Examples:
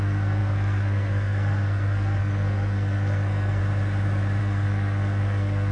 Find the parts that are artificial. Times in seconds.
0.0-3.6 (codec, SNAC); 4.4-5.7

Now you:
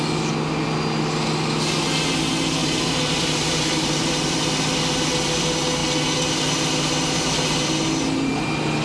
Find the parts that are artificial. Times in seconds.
2.6-4.3 (vocoder, BigVGAN v2)